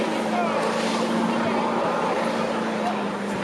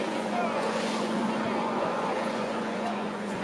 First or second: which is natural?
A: first